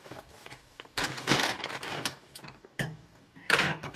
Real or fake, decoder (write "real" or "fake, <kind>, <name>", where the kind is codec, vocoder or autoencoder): fake, codec, DAC